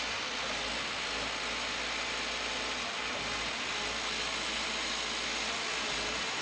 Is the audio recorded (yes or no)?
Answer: yes